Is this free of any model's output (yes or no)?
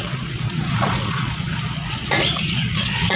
no